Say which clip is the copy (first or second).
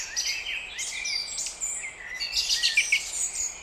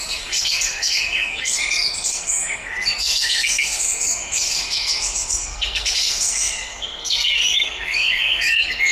second